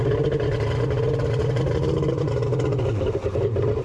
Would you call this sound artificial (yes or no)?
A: no